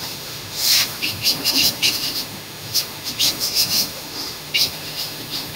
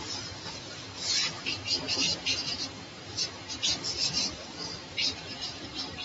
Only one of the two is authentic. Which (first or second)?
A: second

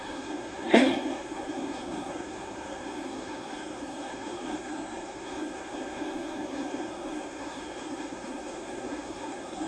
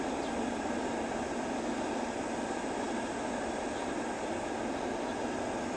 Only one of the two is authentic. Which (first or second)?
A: second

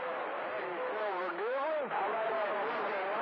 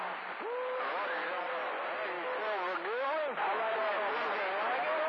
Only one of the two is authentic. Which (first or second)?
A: second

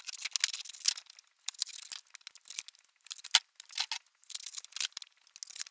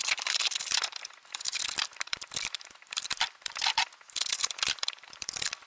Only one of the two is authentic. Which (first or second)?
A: first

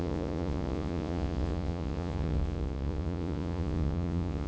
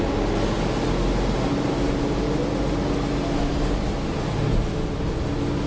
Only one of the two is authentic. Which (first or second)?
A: second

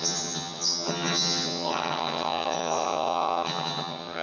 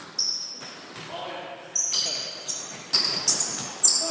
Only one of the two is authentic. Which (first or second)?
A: second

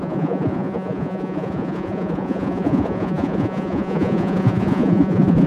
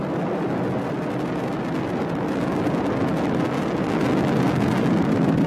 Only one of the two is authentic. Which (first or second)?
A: second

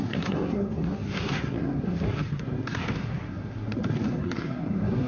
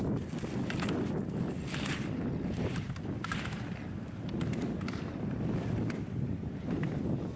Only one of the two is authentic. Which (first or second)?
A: second